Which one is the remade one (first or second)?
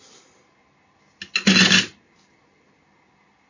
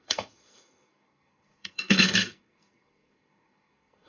second